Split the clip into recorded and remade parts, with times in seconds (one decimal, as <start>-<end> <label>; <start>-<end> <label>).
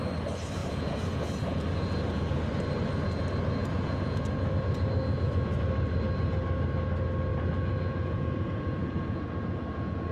0.0-0.6 recorded; 0.6-2.5 remade; 2.5-3.6 recorded; 3.6-4.5 remade; 4.5-7.3 recorded; 7.3-10.1 remade